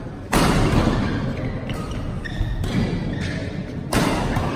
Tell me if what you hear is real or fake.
real